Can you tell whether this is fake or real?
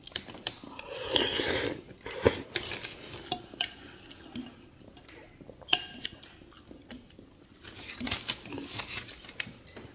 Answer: real